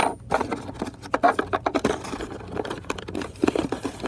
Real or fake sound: real